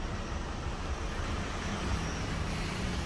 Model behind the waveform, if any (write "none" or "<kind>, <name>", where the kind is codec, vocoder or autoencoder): vocoder, BigVGAN v2